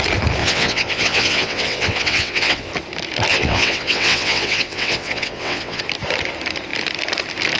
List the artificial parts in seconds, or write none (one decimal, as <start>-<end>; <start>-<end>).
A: 0.4-2.7; 3.3-5.8

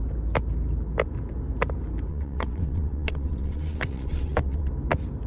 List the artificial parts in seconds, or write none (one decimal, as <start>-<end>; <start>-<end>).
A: 2.1-4.7

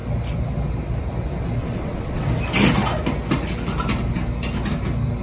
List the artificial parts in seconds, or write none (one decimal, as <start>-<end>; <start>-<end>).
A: 1.6-2.3

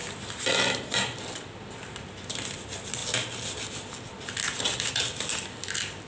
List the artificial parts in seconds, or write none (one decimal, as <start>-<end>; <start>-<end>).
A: none

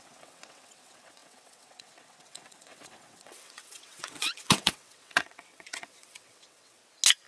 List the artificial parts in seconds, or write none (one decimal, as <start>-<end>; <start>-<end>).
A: 0.0-6.8

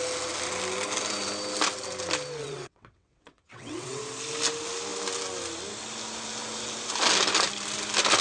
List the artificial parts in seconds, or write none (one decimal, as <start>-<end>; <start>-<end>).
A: 2.4-4.0

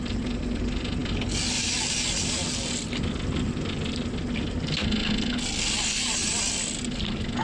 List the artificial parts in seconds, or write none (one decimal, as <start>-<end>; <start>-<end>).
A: none